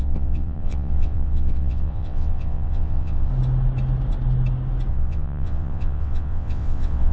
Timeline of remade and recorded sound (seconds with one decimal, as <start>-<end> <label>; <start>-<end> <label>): 0.0-3.3 remade; 3.3-4.9 recorded; 4.9-7.1 remade

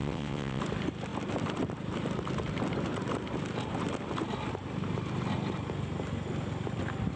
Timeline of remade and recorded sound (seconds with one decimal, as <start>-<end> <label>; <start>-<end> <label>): 0.0-0.6 remade; 0.6-7.2 recorded

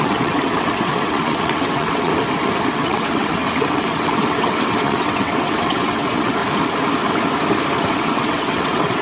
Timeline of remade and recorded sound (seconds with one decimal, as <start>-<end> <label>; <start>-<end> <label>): 0.0-2.1 remade; 2.1-2.7 recorded; 2.7-6.4 remade; 6.4-7.9 recorded; 7.9-9.0 remade

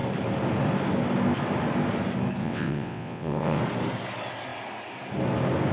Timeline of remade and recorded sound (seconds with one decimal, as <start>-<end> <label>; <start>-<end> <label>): 0.0-2.4 recorded; 2.4-3.6 remade; 3.6-5.7 recorded

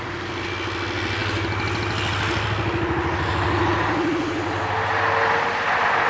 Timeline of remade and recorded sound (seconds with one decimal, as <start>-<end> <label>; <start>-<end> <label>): 0.0-6.1 recorded